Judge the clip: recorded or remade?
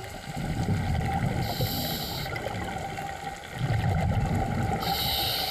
recorded